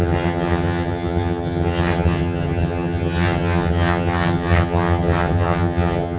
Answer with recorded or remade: remade